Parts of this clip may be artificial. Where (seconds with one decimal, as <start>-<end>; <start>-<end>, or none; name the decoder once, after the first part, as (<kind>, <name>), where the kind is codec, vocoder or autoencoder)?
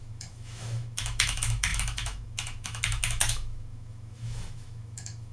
0.0-5.3 (autoencoder, DAC-VAE)